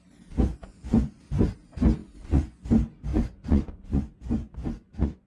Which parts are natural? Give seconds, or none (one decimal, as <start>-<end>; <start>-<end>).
0.0-0.5; 1.2-2.0; 2.7-3.1